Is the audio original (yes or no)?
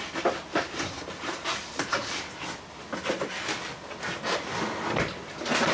yes